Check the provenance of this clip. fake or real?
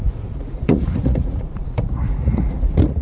fake